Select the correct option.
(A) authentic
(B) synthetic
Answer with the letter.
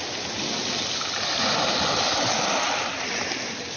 A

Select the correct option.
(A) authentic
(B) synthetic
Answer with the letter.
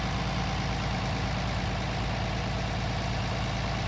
A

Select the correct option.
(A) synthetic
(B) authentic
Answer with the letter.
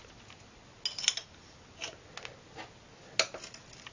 B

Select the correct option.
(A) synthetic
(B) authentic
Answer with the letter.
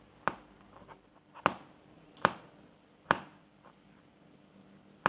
B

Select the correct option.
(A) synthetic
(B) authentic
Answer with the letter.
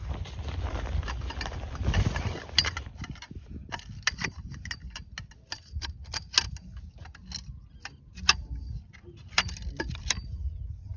B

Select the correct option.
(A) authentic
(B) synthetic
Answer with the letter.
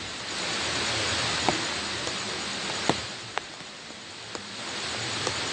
A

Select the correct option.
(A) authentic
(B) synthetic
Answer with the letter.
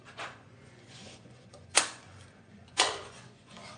B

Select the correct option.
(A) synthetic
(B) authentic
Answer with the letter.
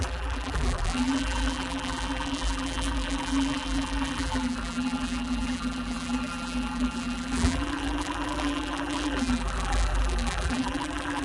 A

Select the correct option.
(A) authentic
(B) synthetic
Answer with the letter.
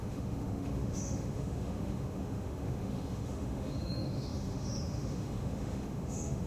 B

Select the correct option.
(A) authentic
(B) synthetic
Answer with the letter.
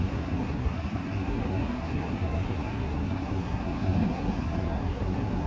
B